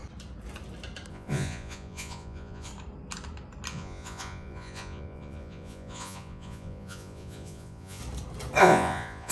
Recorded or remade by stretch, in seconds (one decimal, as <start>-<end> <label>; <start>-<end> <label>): 0.0-1.1 recorded; 1.1-2.7 remade; 2.7-3.7 recorded; 3.7-8.0 remade; 8.0-8.6 recorded; 8.6-9.3 remade